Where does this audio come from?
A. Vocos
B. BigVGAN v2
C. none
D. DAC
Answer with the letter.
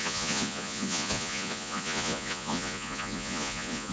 A